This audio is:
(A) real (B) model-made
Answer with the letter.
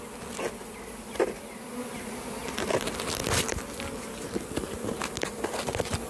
A